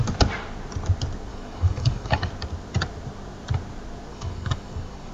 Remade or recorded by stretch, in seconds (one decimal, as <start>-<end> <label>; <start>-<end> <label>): 0.0-1.3 recorded; 1.3-2.3 remade; 2.3-4.1 recorded; 4.1-5.1 remade